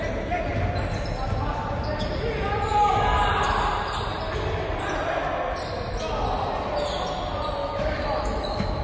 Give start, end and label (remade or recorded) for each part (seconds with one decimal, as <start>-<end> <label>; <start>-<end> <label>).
0.0-7.6 recorded; 7.6-8.8 remade